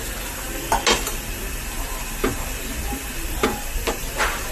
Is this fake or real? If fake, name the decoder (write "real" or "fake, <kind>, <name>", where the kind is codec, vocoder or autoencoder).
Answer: real